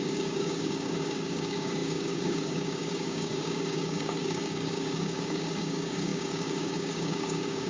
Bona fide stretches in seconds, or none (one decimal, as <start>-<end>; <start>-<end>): none